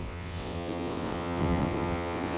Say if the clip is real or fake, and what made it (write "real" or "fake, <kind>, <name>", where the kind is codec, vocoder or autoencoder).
fake, vocoder, WaveNeXt